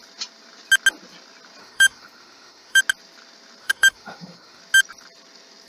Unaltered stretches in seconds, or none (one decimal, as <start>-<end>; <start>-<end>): 0.0-1.6; 2.8-3.6; 4.6-5.7